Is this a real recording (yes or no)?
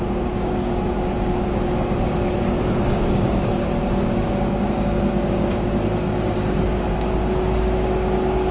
no